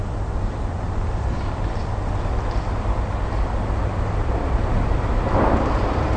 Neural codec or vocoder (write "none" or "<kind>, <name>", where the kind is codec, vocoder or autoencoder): vocoder, BigVGAN v2